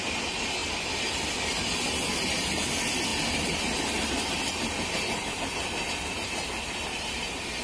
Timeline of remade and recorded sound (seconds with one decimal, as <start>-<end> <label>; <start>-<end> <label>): 0.0-7.6 recorded

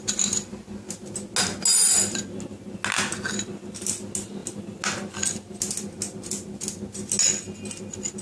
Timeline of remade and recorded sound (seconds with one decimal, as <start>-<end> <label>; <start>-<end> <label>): 0.0-8.2 recorded